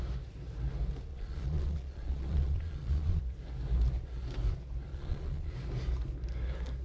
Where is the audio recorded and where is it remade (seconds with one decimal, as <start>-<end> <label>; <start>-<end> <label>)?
0.0-1.1 recorded; 1.1-3.2 remade; 3.2-4.9 recorded; 4.9-5.5 remade; 5.5-6.8 recorded